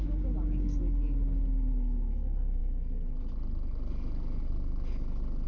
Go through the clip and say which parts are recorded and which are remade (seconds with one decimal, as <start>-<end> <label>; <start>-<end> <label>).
0.0-5.5 recorded

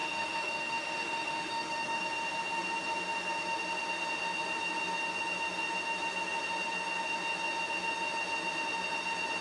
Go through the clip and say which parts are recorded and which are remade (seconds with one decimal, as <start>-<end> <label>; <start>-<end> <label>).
0.0-2.0 remade; 2.0-9.4 recorded

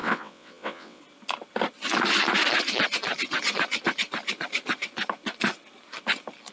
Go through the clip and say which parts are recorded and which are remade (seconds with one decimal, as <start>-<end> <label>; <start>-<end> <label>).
0.0-1.0 remade; 1.0-6.5 recorded

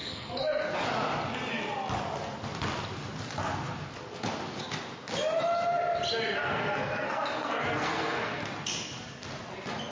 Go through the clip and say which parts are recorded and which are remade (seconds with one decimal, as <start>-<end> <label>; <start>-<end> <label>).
0.0-0.6 remade; 0.6-6.4 recorded; 6.4-8.5 remade; 8.5-9.9 recorded

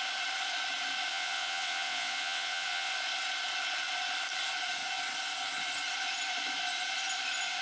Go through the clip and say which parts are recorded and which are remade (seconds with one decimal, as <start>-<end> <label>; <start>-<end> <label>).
0.0-1.1 recorded; 1.1-2.9 remade; 2.9-7.6 recorded

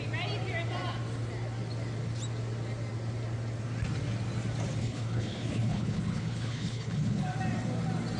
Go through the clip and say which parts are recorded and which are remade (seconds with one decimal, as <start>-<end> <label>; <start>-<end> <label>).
0.0-4.8 recorded; 4.8-7.2 remade; 7.2-8.2 recorded

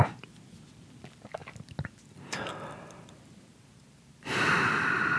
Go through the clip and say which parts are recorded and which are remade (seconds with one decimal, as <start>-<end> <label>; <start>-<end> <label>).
0.0-5.2 recorded

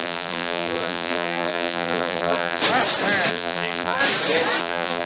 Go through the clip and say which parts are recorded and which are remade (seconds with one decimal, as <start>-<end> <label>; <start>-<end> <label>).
0.0-2.6 remade; 2.6-3.3 recorded; 3.3-4.0 remade; 4.0-4.6 recorded; 4.6-5.1 remade